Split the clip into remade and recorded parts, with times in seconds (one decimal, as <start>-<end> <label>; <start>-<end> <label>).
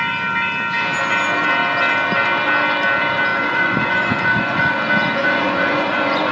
0.0-3.3 recorded; 3.3-4.8 remade; 4.8-5.2 recorded; 5.2-6.3 remade